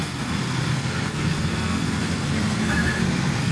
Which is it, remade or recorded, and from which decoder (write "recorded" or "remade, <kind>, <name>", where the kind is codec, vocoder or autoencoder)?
remade, codec, SNAC